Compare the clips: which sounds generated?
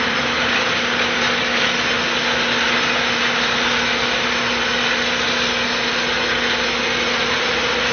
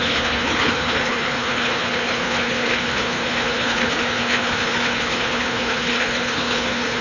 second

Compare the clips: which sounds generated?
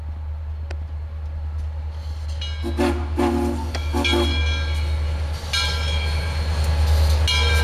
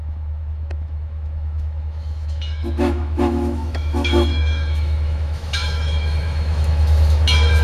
second